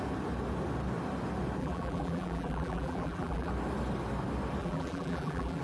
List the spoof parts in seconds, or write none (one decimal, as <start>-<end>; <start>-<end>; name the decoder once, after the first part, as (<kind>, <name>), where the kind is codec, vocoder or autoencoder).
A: 1.6-3.5 (vocoder, BigVGAN v2); 4.6-5.6